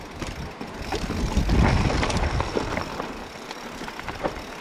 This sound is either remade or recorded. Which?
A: recorded